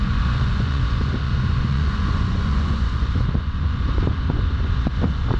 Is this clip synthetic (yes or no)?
yes